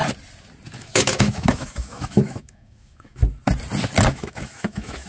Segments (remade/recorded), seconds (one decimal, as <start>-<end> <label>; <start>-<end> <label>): 0.0-0.8 recorded; 0.8-3.2 remade; 3.2-4.1 recorded; 4.1-5.1 remade